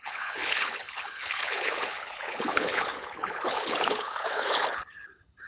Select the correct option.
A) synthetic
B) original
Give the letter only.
A